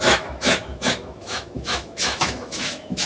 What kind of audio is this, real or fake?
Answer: fake